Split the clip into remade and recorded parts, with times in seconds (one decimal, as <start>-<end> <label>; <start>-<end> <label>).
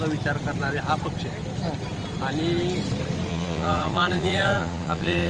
0.0-3.3 recorded; 3.3-5.3 remade